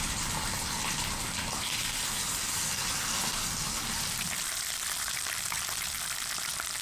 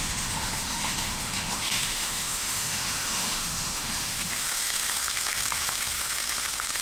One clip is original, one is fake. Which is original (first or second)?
first